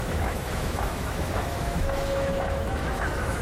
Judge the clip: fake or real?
fake